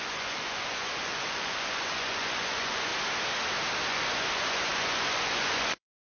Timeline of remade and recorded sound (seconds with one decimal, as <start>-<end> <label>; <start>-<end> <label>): 0.0-2.9 remade; 2.9-3.9 recorded; 3.9-6.2 remade